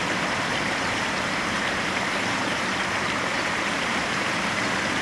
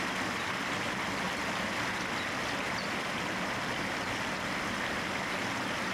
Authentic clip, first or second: second